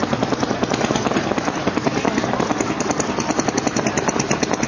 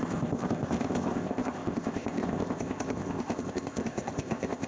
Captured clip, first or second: first